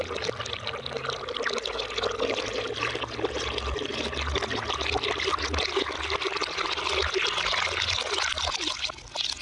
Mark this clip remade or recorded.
recorded